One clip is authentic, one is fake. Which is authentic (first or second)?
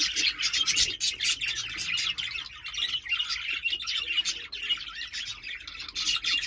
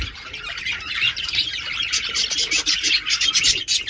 first